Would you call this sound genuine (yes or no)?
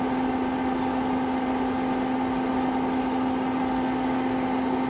yes